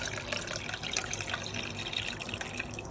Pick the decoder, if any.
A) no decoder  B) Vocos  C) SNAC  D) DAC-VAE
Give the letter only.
A